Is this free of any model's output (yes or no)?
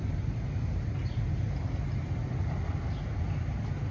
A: yes